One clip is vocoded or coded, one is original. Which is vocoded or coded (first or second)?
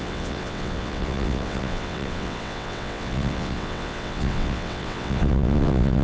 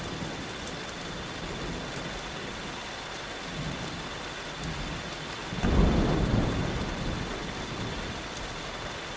first